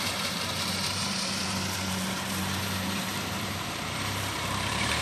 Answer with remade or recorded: remade